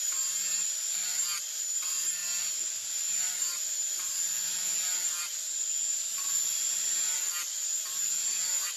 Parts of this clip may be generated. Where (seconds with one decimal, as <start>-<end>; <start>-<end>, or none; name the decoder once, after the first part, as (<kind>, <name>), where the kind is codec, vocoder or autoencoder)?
0.0-8.8 (vocoder, BigVGAN v2)